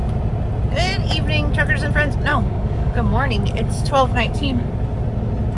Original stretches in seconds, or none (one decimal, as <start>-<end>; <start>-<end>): 0.0-2.3; 4.7-5.6